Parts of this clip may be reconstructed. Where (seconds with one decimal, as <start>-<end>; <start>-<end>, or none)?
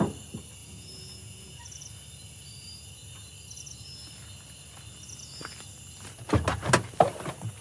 0.6-1.6